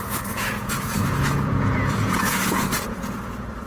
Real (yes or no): no